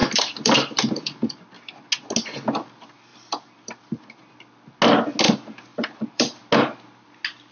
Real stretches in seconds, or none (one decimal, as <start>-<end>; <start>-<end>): 1.4-3.1; 4.0-5.7; 6.4-7.5